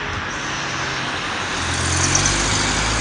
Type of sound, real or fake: real